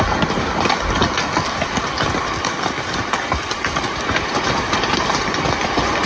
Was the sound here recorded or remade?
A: recorded